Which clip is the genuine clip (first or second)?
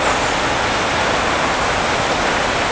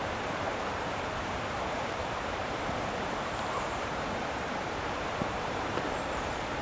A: first